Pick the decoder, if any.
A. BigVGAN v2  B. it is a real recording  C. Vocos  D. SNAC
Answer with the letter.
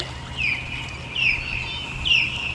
B